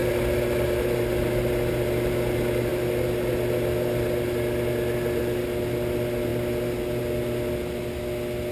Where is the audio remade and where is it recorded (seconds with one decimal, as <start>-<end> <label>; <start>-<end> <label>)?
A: 0.0-8.5 recorded